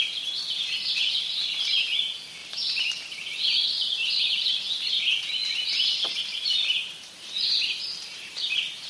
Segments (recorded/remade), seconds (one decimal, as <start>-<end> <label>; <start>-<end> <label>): 0.0-2.4 recorded; 2.4-3.0 remade; 3.0-7.9 recorded; 7.9-8.5 remade; 8.5-8.9 recorded